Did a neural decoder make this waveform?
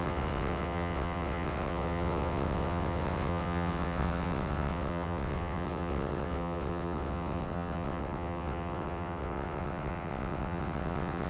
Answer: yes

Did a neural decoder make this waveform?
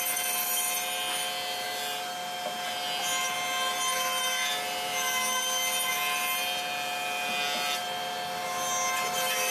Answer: no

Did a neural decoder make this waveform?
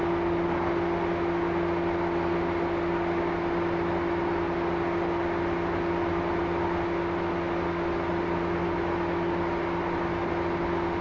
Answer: no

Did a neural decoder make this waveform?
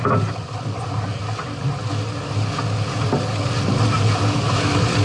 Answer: no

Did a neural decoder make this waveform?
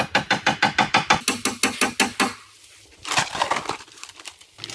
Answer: no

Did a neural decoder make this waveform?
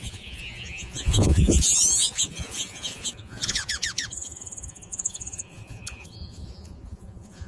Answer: yes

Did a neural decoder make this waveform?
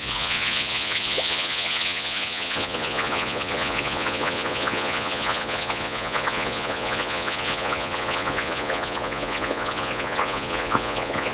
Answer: yes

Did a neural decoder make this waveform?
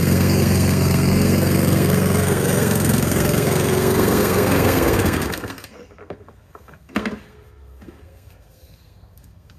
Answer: yes